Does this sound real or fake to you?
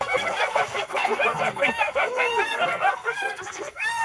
fake